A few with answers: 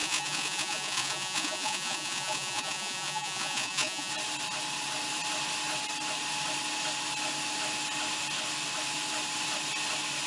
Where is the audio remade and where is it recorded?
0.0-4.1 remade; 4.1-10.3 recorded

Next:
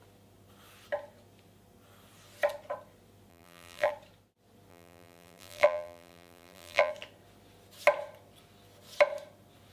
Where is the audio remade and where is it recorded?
0.0-3.3 recorded; 3.3-3.9 remade; 3.9-4.7 recorded; 4.7-6.9 remade; 6.9-9.7 recorded

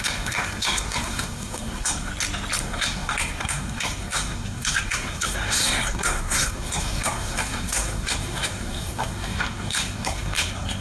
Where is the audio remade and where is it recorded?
0.0-2.1 remade; 2.1-2.6 recorded; 2.6-10.8 remade